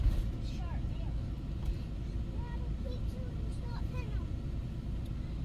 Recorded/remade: recorded